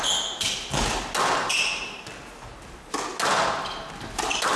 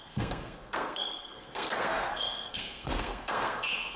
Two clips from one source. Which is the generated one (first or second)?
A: second